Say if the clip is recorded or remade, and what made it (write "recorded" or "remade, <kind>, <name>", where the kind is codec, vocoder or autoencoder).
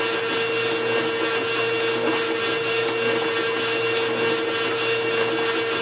recorded